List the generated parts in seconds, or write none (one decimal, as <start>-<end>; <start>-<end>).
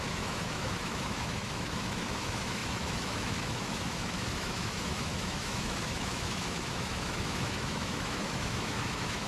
0.0-9.3